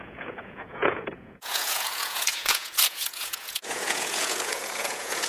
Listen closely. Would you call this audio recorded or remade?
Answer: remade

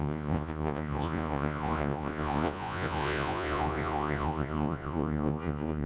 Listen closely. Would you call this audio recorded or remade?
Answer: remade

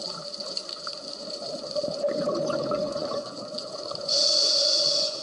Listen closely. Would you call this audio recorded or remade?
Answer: remade